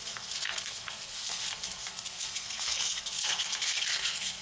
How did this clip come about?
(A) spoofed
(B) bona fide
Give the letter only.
A